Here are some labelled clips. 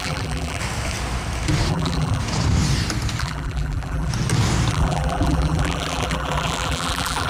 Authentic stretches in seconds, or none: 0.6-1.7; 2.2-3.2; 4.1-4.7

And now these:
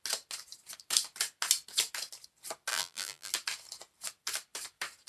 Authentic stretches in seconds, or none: 0.0-2.7; 3.3-5.1

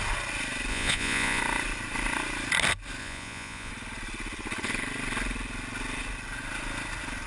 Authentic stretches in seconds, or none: 0.0-0.7; 1.4-3.0; 3.7-7.3

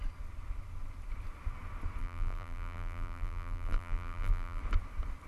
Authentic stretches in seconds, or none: 0.0-2.0; 4.6-5.3

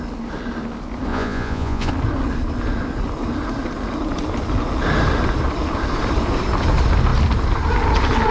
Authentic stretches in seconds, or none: 0.0-1.1; 1.9-8.3